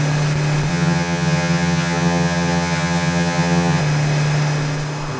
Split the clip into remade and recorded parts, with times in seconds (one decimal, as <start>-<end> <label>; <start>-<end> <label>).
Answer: 0.0-0.7 recorded; 0.7-3.8 remade; 3.8-5.2 recorded